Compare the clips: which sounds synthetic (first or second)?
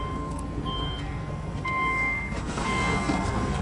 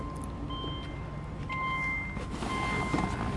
first